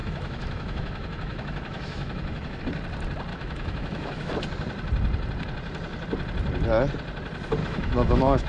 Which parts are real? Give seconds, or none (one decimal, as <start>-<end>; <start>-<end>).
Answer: 2.6-3.3; 4.3-7.6